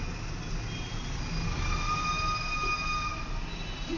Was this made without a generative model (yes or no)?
yes